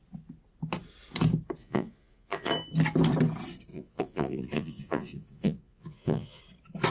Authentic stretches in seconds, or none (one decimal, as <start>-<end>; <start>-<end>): 0.0-1.6; 2.5-3.7; 6.4-6.9